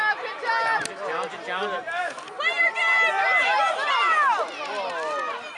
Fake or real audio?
real